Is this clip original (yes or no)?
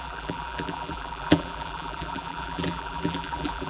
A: no